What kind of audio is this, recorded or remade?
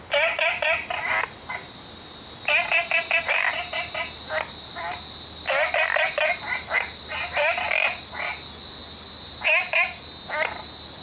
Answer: recorded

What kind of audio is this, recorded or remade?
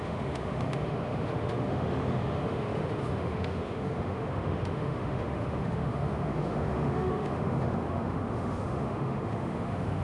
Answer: remade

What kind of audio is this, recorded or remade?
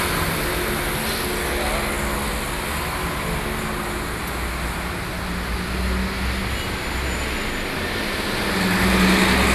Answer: recorded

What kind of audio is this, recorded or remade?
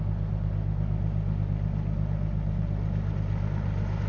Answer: recorded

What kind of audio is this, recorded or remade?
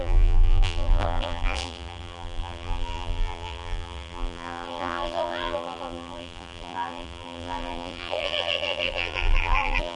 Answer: remade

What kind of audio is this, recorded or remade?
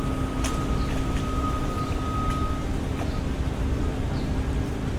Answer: recorded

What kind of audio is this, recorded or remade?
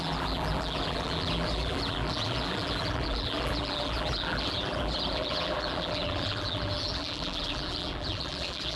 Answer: remade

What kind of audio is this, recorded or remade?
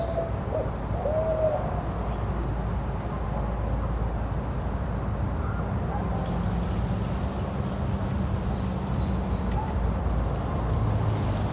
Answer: recorded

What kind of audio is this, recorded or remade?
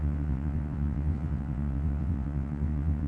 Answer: remade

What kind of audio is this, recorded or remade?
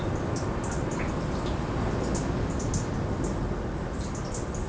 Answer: recorded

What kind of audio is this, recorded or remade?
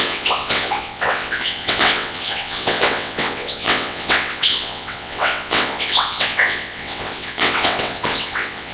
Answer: remade